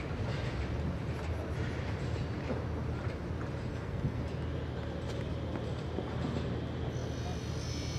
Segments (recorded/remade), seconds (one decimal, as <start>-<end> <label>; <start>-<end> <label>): 0.0-3.7 recorded; 3.7-4.2 remade; 4.2-8.0 recorded